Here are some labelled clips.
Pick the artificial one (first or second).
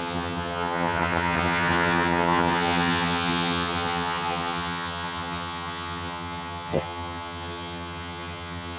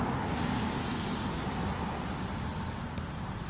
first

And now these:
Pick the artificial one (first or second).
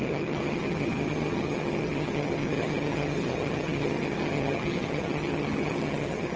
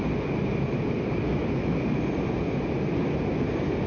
first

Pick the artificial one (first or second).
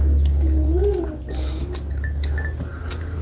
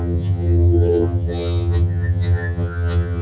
second